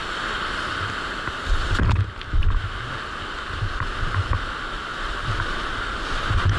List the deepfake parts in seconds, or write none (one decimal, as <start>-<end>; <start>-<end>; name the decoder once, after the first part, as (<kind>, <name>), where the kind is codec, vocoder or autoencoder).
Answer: 4.9-6.0 (vocoder, BigVGAN v2)